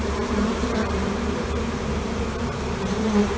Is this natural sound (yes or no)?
no